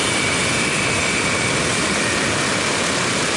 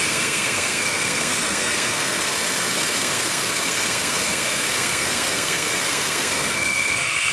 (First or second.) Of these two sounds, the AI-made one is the second